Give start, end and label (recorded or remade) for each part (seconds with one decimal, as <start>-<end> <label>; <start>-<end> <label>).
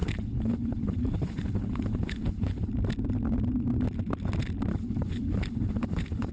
0.0-2.7 remade; 2.7-4.7 recorded; 4.7-6.3 remade